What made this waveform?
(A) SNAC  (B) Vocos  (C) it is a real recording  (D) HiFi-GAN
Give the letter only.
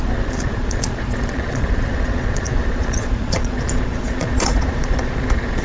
B